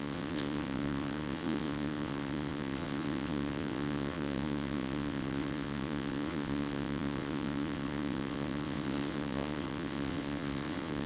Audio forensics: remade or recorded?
remade